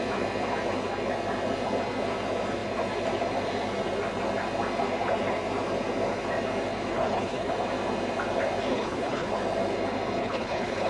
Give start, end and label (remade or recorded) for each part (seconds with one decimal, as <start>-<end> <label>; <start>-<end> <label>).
0.0-6.9 recorded; 6.9-7.5 remade; 7.5-8.7 recorded; 8.7-9.3 remade; 9.3-10.2 recorded; 10.2-10.9 remade

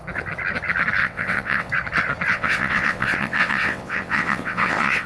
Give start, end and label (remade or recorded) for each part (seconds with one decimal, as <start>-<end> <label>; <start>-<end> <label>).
0.0-1.0 recorded; 1.0-1.7 remade; 1.7-2.3 recorded; 2.3-5.1 remade

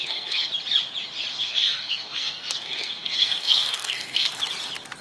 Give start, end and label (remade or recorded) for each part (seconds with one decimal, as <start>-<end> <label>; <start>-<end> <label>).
0.0-0.5 remade; 0.5-1.3 recorded; 1.3-4.3 remade; 4.3-5.0 recorded

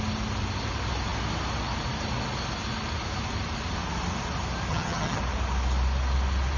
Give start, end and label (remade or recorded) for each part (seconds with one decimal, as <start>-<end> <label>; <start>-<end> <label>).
0.0-4.7 recorded; 4.7-5.2 remade; 5.2-6.6 recorded

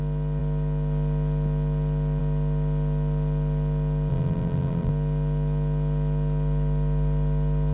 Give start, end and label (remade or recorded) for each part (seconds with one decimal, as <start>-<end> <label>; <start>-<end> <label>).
0.0-4.1 recorded; 4.1-4.9 remade; 4.9-7.7 recorded

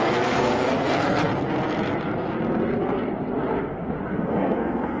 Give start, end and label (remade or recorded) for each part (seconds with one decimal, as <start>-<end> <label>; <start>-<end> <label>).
0.0-1.3 remade; 1.3-4.1 recorded; 4.1-5.0 remade

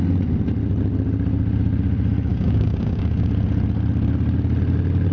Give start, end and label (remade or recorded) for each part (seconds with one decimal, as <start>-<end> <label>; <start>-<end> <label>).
0.0-2.3 recorded; 2.3-3.3 remade; 3.3-5.1 recorded